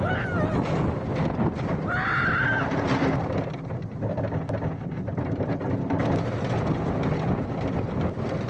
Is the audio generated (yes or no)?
no